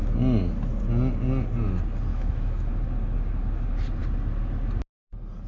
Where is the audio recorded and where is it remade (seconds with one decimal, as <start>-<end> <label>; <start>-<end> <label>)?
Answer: 0.0-2.1 recorded; 2.1-2.7 remade; 2.7-5.5 recorded